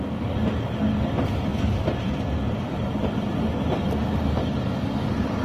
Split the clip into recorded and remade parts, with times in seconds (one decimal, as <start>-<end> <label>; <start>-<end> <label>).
0.0-5.4 recorded

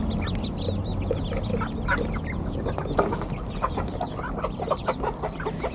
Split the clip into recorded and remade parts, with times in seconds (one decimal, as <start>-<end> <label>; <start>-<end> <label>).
0.0-0.8 recorded; 0.8-5.7 remade

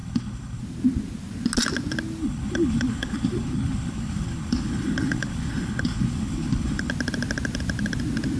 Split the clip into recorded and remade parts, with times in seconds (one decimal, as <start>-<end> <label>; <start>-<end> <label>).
0.0-0.6 remade; 0.6-2.2 recorded; 2.2-6.9 remade; 6.9-8.4 recorded

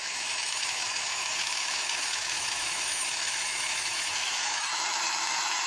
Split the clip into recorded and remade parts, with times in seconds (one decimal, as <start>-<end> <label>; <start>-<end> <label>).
0.0-5.7 remade